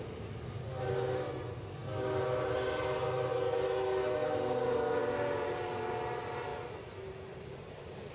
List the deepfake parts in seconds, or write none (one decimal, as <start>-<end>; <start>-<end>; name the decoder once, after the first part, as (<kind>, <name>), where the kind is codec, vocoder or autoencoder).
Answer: none